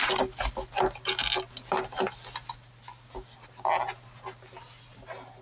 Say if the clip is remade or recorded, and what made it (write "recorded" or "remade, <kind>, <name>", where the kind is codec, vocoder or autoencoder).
recorded